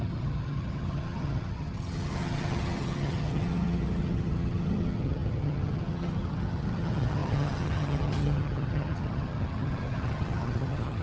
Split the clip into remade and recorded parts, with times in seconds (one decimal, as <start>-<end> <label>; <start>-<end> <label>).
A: 0.0-11.0 remade